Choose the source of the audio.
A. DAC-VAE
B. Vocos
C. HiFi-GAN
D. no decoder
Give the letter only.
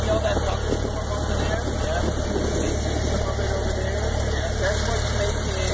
D